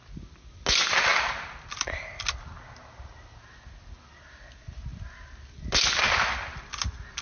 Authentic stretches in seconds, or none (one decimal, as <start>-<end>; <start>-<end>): 0.0-7.2